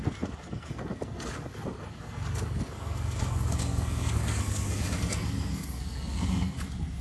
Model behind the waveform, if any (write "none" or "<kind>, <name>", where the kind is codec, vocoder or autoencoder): codec, SNAC